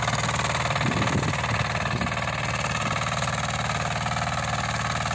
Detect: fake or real real